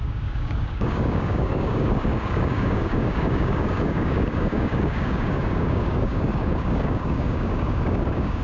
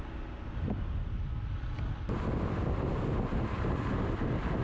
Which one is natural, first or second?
second